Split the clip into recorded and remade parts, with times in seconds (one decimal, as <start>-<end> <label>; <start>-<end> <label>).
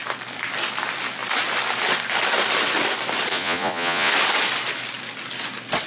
0.0-3.3 recorded; 3.3-4.1 remade; 4.1-5.9 recorded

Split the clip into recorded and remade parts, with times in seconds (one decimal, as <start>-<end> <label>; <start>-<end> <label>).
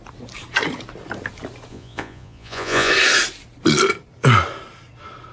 0.0-1.7 recorded; 1.7-2.9 remade; 2.9-5.3 recorded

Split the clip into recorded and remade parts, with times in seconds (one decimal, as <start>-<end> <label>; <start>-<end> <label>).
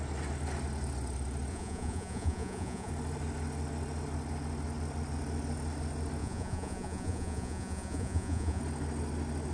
0.0-1.5 recorded; 1.5-2.9 remade; 2.9-6.2 recorded; 6.2-8.6 remade; 8.6-9.5 recorded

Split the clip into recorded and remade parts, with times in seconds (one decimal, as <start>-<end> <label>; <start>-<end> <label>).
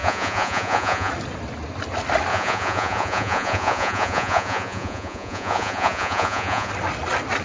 0.0-1.1 remade; 1.1-2.3 recorded; 2.3-6.7 remade; 6.7-7.4 recorded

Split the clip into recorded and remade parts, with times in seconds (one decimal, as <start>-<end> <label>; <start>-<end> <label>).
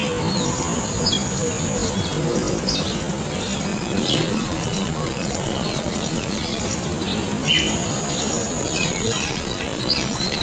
0.0-3.7 recorded; 3.7-6.6 remade; 6.6-8.6 recorded; 8.6-10.4 remade